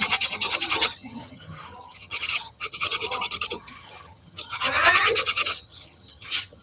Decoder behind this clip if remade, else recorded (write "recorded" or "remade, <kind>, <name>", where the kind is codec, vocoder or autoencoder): remade, vocoder, HiFi-GAN